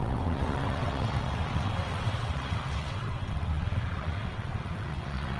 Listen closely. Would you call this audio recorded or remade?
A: remade